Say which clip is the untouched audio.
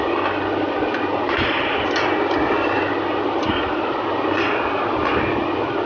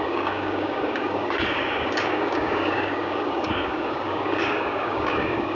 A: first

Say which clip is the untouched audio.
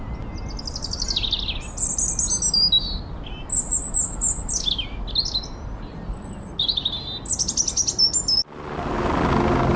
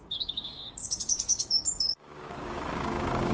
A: first